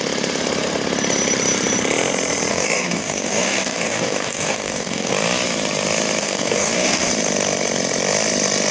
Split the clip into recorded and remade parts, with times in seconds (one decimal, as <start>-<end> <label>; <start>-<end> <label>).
0.0-2.5 recorded; 2.5-5.1 remade; 5.1-6.2 recorded; 6.2-7.1 remade; 7.1-8.7 recorded